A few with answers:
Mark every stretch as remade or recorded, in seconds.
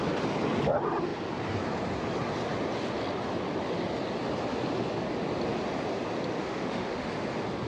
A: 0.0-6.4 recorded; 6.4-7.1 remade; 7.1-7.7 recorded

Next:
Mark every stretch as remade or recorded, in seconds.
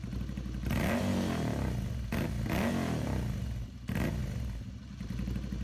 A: 0.0-5.6 recorded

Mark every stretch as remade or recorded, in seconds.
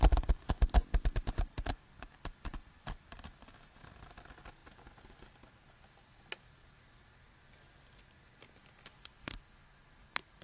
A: 0.0-10.4 recorded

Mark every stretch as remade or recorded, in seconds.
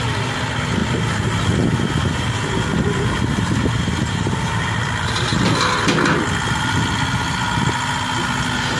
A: 0.0-8.8 recorded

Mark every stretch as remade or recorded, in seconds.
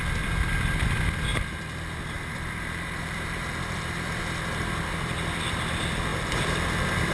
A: 0.0-1.3 recorded; 1.3-4.2 remade; 4.2-6.1 recorded; 6.1-7.1 remade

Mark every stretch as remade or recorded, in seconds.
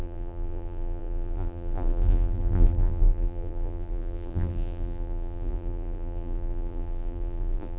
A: 0.0-7.8 remade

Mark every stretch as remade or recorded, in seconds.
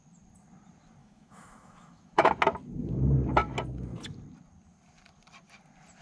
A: 0.0-1.0 recorded; 1.0-2.3 remade; 2.3-6.0 recorded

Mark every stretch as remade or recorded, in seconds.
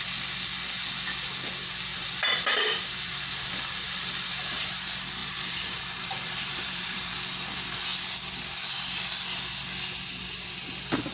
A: 0.0-1.9 recorded; 1.9-4.7 remade; 4.7-5.2 recorded; 5.2-7.1 remade; 7.1-11.1 recorded